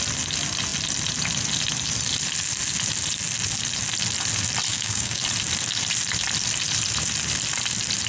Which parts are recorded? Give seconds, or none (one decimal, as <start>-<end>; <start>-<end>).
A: 0.0-4.7; 5.2-8.1